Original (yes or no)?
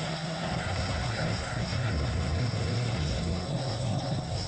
no